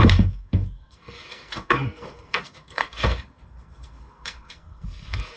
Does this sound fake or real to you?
fake